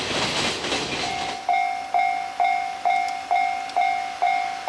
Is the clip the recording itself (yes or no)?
yes